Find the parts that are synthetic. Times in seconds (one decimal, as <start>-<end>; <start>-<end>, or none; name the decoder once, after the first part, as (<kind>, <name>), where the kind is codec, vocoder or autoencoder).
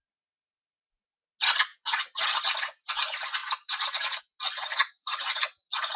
3.4-4.2 (vocoder, BigVGAN v2); 4.8-5.4